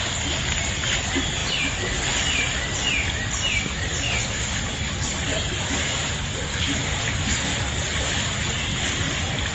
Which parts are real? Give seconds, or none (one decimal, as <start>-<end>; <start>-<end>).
0.0-9.5